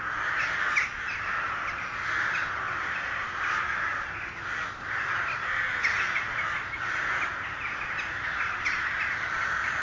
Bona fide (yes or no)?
yes